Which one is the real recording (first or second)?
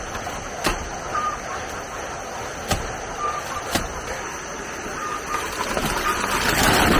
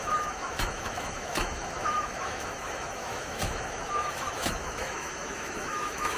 first